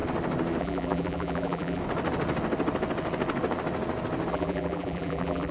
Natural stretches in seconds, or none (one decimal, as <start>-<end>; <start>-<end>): 0.0-0.6; 1.8-4.3

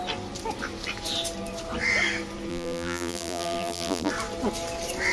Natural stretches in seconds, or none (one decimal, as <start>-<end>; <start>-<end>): 0.0-2.5; 4.1-5.1

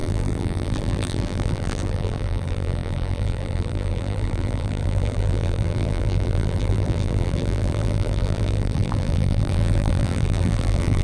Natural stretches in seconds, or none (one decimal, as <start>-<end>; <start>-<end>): none

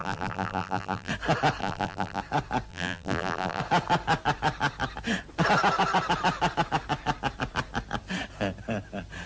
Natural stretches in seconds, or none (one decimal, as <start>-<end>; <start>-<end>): 1.1-1.6; 2.2-2.7; 3.6-9.3

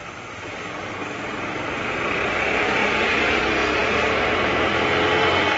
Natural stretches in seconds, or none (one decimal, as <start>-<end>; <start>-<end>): 0.0-1.0; 1.5-2.8; 3.4-3.8; 4.7-5.6

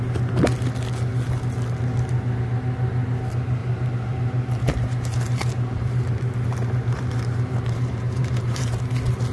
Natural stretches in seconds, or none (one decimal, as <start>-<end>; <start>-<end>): 0.0-3.6; 8.8-9.3

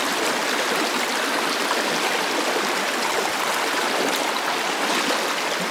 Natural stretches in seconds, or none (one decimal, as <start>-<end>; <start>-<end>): 0.0-0.4; 3.8-5.7

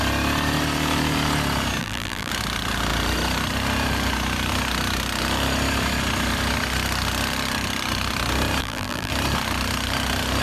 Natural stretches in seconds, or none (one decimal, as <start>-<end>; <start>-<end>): 0.0-1.8; 2.3-8.6; 9.1-10.4